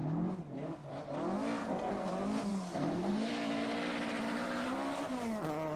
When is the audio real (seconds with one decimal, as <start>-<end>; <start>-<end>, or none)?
0.9-1.6; 2.1-2.5; 3.3-5.8